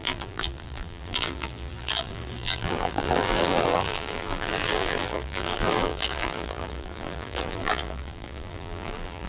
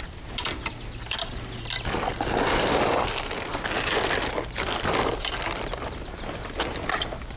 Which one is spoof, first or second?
first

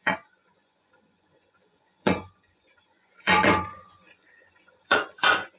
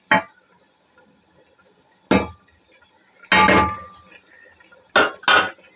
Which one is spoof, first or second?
first